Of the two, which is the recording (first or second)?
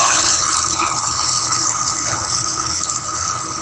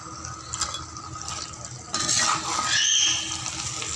second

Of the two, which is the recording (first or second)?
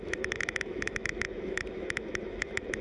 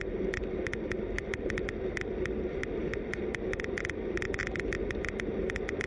second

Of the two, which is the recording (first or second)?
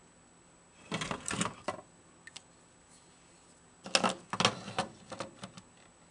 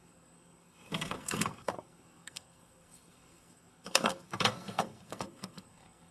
first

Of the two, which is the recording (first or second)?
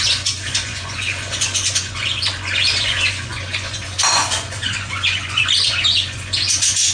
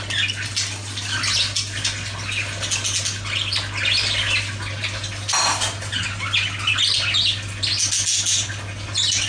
second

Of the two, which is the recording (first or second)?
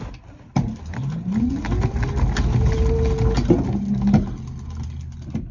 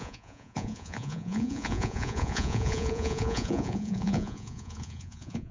first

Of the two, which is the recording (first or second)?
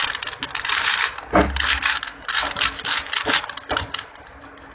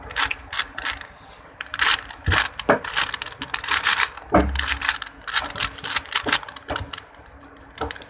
first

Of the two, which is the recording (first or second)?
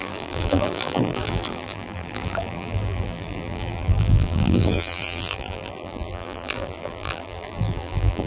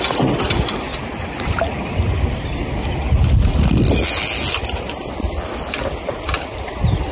second